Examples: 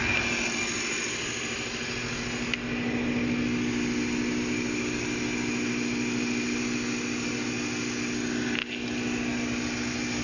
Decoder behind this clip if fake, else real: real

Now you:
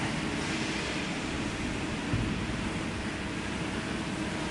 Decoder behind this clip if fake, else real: real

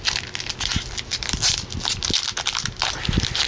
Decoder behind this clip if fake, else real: real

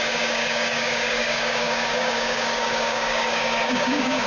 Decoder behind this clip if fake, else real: fake, codec, DAC